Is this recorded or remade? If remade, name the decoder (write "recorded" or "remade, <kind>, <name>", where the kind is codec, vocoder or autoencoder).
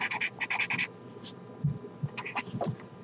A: recorded